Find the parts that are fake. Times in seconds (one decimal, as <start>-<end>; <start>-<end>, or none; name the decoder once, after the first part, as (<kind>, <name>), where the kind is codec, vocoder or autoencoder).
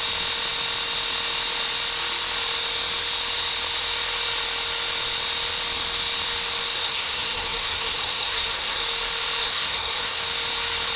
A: 6.7-8.8 (codec, SNAC); 9.4-10.2